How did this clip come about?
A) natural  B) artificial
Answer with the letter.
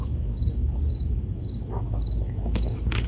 B